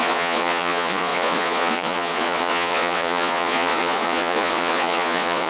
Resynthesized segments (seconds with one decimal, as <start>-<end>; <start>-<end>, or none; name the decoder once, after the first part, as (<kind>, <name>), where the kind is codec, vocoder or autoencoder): 0.0-5.5 (vocoder, Vocos)